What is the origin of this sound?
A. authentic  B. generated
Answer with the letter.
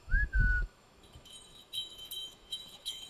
B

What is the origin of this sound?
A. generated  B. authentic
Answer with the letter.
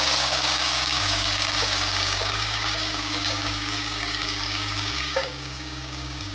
A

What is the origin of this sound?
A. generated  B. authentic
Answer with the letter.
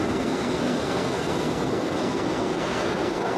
A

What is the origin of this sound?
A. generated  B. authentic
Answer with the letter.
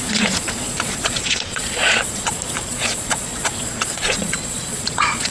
A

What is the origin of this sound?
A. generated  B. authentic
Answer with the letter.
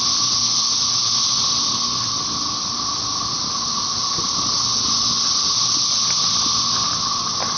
B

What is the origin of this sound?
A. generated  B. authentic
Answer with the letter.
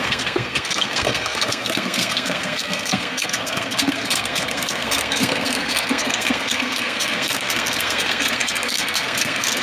A